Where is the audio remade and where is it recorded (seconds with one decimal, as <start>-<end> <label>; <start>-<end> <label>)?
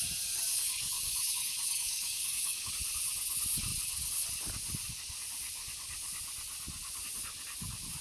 0.0-0.5 recorded; 0.5-2.7 remade; 2.7-8.0 recorded